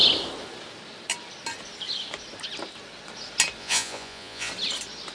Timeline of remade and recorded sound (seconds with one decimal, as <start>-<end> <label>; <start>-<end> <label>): 0.0-3.6 recorded; 3.6-4.5 remade; 4.5-5.1 recorded